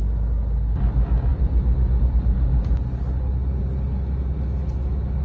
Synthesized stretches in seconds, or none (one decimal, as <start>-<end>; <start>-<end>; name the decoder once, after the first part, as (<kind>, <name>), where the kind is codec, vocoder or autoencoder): none